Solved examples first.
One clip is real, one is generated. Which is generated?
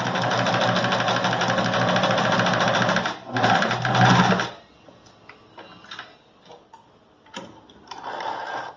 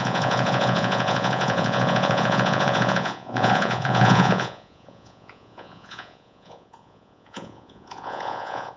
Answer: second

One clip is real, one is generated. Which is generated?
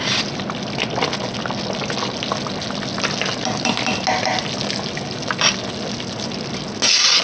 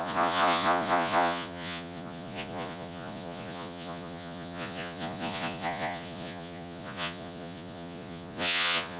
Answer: second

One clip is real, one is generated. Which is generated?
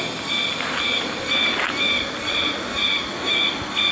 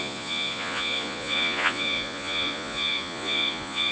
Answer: second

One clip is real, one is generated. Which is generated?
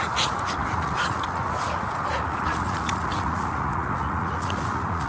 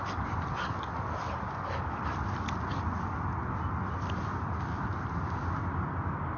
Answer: first